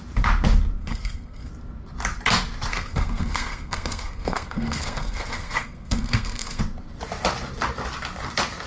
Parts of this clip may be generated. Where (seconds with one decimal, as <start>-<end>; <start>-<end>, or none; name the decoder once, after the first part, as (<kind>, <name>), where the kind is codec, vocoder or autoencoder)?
0.8-1.5 (codec, SNAC); 2.7-6.6